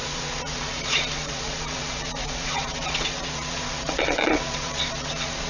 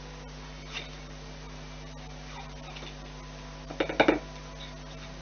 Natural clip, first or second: second